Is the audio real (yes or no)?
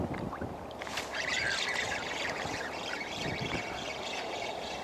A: no